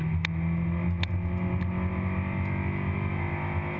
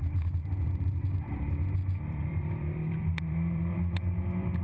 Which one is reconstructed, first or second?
second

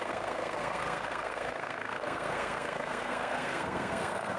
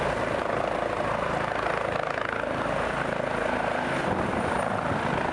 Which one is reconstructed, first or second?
first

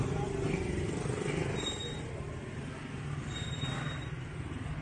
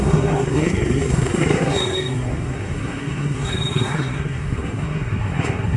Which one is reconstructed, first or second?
second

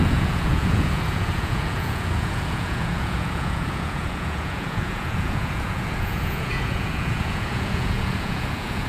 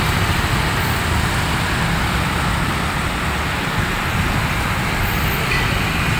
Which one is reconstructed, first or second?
first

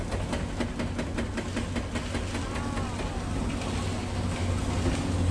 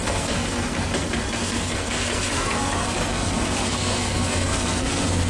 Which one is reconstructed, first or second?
second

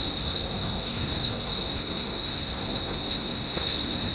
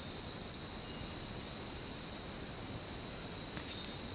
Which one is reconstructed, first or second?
first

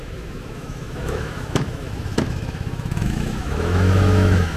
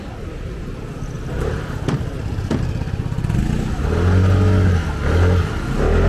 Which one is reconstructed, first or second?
first